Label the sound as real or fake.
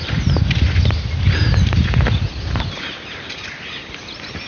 fake